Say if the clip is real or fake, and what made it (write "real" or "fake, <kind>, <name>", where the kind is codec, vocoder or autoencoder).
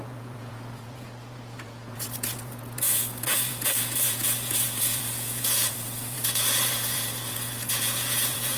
fake, vocoder, Vocos